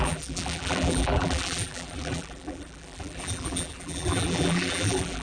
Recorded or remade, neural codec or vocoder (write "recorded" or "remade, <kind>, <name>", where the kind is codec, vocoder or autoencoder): remade, vocoder, BigVGAN v2